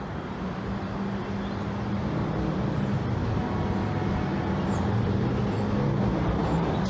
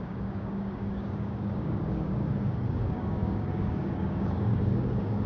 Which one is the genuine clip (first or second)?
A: first